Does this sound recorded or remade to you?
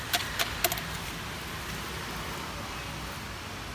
recorded